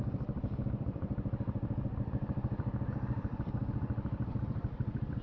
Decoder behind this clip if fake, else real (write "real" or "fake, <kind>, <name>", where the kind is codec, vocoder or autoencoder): fake, vocoder, BigVGAN v2